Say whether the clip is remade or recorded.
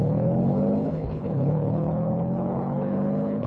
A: remade